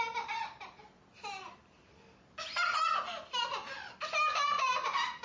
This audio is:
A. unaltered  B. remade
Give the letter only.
A